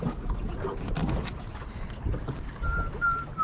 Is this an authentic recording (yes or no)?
no